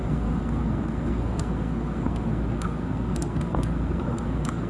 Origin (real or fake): fake